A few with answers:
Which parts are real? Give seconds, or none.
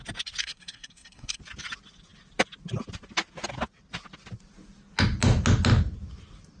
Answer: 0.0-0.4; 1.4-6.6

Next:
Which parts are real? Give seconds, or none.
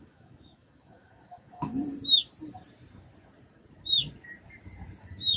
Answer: 1.8-5.0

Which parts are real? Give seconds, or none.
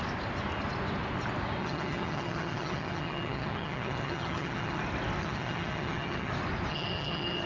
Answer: 0.0-1.6; 4.8-5.2; 6.3-6.7